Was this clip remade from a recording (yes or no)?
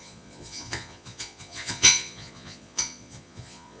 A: yes